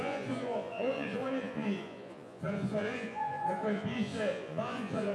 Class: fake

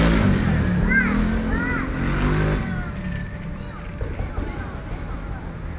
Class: real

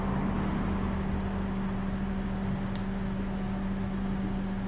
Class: real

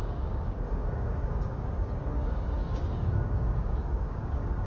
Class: fake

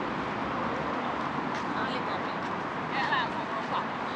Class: real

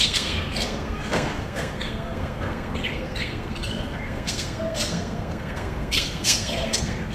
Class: fake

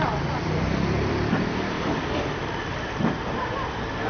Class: fake